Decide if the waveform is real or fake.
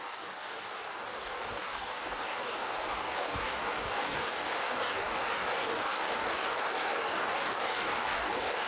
fake